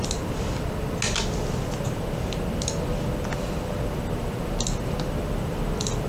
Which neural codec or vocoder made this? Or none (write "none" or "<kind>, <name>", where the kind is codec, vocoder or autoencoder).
none